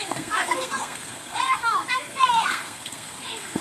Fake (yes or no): yes